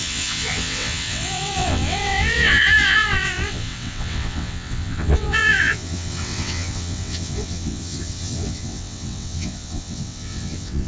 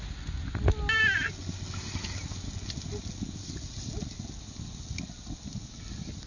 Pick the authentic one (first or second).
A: second